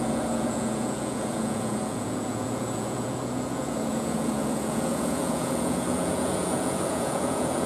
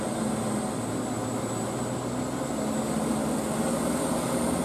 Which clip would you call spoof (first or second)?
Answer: first